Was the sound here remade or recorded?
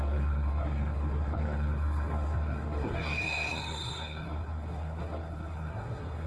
remade